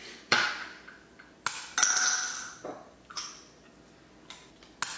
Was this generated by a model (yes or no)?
no